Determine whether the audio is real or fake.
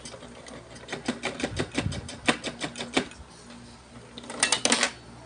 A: real